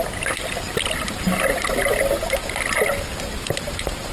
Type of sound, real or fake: real